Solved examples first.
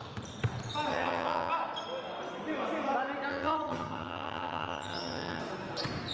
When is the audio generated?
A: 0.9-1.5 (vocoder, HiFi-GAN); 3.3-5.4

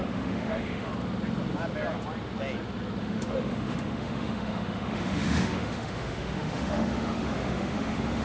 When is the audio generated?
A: 0.0-0.9 (autoencoder, DAC-VAE); 3.0-8.2

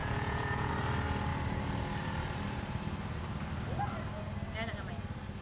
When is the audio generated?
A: 0.0-0.7 (vocoder, Vocos)

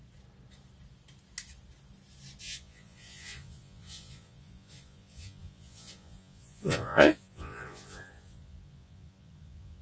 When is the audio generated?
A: 2.4-9.8 (vocoder, Vocos)

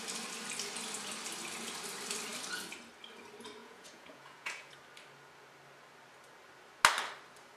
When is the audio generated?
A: 3.6-4.7 (vocoder, Vocos)

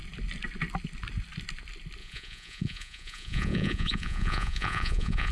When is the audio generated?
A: 2.0-5.3 (vocoder, Vocos)

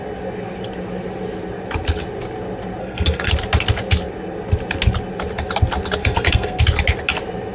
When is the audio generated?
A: 2.8-3.3 (codec, SNAC); 6.0-6.6

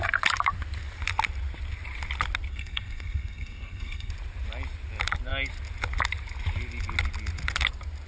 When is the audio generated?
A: 2.5-4.1 (codec, SNAC)